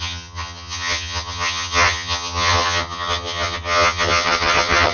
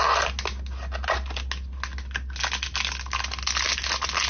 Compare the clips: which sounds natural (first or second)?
second